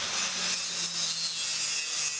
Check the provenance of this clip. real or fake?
real